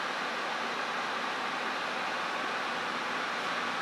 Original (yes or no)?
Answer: yes